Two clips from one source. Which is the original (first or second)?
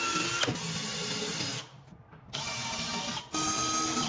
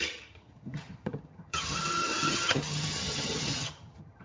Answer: first